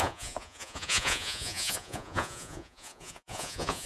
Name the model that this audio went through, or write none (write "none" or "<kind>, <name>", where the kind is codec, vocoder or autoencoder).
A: vocoder, Vocos